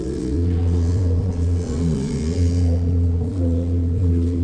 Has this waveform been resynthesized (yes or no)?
yes